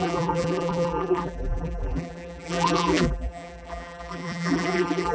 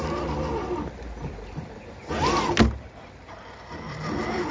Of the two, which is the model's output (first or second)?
first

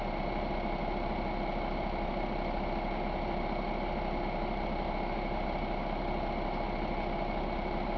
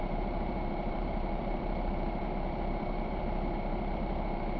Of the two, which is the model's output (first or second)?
second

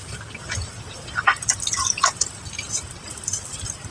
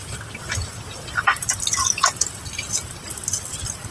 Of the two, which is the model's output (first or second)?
first